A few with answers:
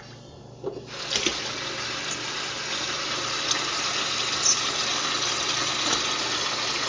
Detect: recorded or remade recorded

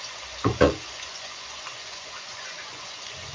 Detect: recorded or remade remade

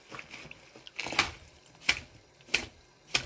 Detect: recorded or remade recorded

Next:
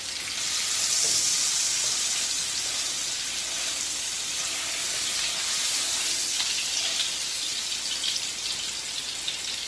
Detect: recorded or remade recorded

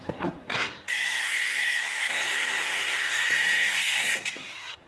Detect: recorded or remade remade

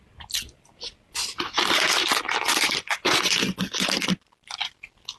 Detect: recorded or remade recorded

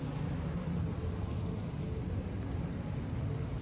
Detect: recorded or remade recorded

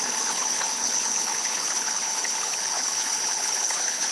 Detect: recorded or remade remade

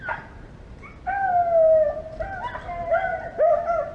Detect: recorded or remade recorded